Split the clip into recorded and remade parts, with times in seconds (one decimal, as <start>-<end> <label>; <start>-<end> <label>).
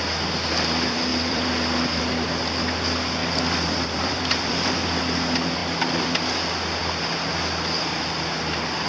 0.0-1.1 recorded; 1.1-2.0 remade; 2.0-3.2 recorded; 3.2-5.0 remade; 5.0-5.6 recorded; 5.6-6.2 remade; 6.2-8.9 recorded